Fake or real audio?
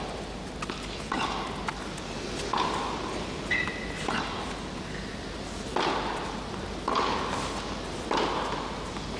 real